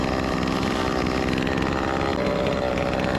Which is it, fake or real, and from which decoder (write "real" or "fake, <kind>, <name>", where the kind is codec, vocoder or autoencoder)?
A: real